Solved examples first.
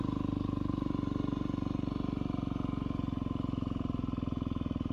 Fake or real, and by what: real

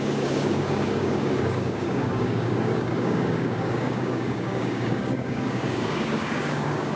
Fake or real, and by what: fake, codec, DAC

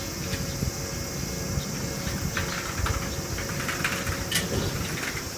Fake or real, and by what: real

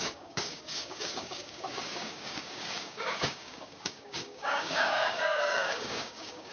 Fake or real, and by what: fake, codec, DAC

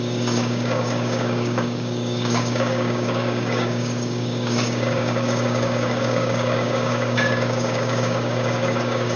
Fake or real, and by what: fake, codec, DAC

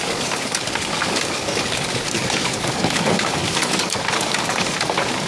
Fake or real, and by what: fake, codec, DAC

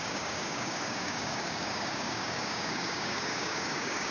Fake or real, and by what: fake, codec, DAC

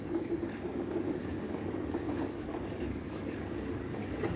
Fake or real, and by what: fake, codec, DAC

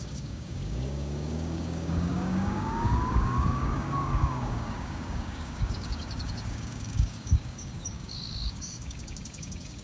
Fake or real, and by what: fake, codec, DAC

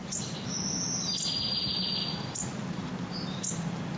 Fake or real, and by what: real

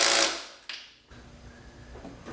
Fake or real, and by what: real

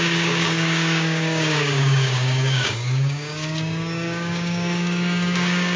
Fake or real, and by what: fake, codec, DAC